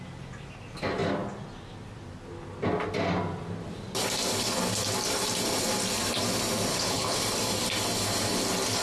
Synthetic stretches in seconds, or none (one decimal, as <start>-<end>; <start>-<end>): 6.7-7.2